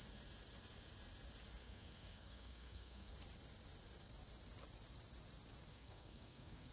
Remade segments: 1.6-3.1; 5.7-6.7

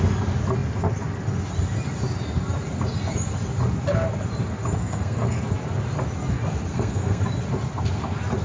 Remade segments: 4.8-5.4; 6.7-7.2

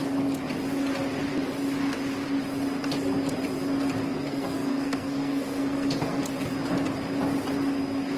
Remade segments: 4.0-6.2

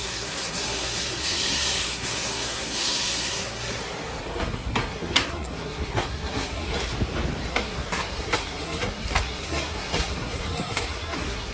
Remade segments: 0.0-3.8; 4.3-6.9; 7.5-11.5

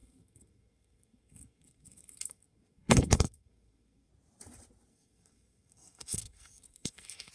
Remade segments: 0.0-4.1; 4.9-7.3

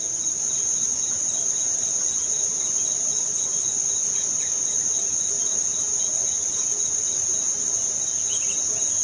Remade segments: none